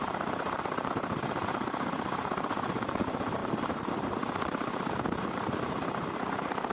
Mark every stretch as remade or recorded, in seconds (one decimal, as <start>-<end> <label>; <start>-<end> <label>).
0.0-6.7 remade